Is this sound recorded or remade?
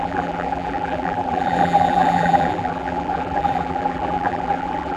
remade